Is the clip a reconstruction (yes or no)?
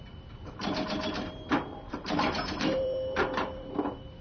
yes